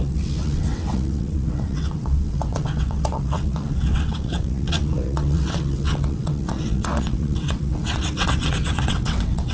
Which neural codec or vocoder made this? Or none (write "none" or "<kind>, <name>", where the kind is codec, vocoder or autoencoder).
vocoder, WaveNeXt